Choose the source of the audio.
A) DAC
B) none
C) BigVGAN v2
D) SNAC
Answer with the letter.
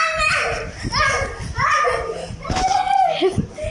B